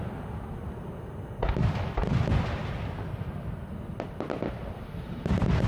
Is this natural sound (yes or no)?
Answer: yes